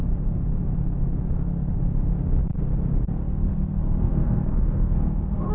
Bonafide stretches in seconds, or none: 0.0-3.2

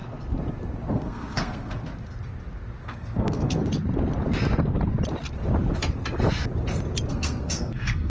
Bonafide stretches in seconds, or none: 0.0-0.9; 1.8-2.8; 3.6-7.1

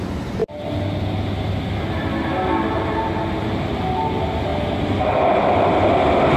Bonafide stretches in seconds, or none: 0.0-6.4

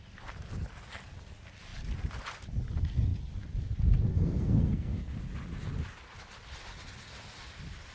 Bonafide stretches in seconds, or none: 0.0-4.1; 5.1-7.9

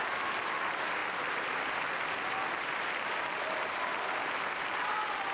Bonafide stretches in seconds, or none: 0.0-5.3

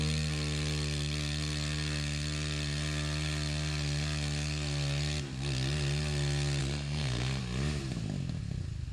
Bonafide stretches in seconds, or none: 0.0-6.6; 7.4-8.9